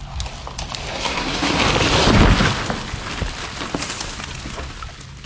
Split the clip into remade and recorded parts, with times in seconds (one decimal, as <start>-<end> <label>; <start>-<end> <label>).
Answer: 0.0-0.9 recorded; 0.9-1.6 remade; 1.6-5.3 recorded